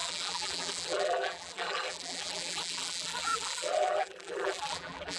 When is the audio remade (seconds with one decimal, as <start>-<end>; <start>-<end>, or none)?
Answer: 0.0-5.2